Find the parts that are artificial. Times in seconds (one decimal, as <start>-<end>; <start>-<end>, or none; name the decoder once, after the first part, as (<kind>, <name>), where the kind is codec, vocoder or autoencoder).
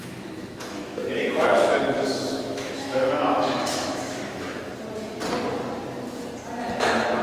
0.0-4.7 (autoencoder, DAC-VAE); 6.8-7.2